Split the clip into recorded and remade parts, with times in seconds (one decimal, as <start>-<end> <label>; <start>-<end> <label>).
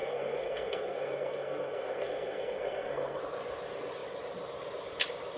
0.0-3.2 remade; 3.2-5.4 recorded